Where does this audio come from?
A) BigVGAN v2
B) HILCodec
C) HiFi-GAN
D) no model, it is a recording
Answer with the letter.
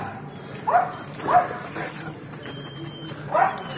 A